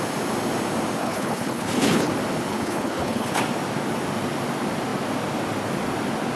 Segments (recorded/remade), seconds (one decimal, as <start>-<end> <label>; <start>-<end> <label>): 0.0-1.0 recorded; 1.0-2.1 remade; 2.1-2.5 recorded; 2.5-3.4 remade; 3.4-6.4 recorded